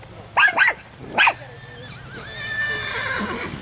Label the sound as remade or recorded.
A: recorded